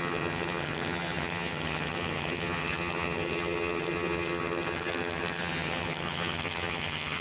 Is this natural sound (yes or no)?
no